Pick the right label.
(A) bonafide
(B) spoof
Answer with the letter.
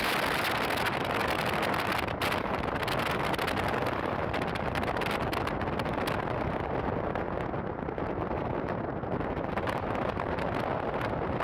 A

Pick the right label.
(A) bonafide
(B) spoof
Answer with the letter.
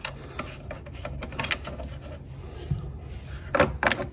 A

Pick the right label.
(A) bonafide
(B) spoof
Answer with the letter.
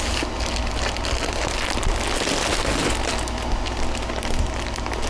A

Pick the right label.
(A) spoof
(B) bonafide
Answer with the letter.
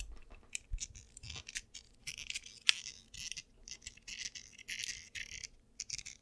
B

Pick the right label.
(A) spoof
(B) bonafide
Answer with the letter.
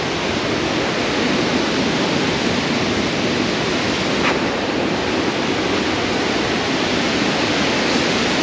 B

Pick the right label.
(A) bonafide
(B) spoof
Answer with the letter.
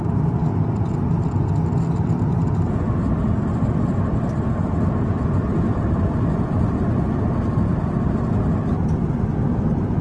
A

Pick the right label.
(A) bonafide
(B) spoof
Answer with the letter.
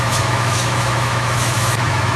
B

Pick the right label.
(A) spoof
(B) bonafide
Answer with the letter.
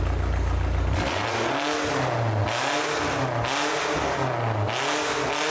B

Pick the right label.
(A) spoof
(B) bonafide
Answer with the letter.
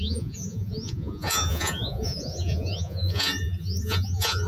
A